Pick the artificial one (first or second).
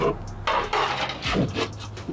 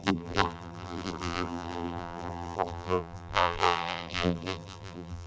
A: second